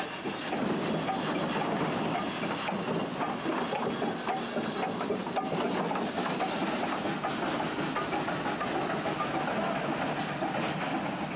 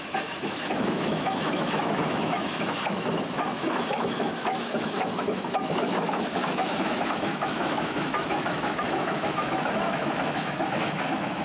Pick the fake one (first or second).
second